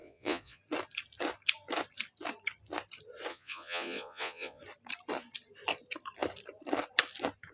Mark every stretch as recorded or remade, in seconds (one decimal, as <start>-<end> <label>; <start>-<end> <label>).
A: 0.0-0.6 remade; 0.6-3.3 recorded; 3.3-4.6 remade; 4.6-7.5 recorded